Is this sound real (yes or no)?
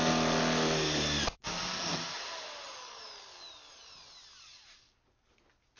yes